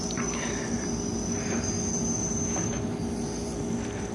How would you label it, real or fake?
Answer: real